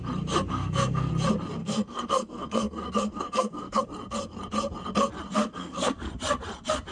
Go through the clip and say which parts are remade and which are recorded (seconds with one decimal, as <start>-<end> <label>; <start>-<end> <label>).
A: 0.0-0.5 recorded; 0.5-1.1 remade; 1.1-1.6 recorded; 1.6-3.8 remade; 3.8-5.5 recorded; 5.5-6.1 remade; 6.1-6.9 recorded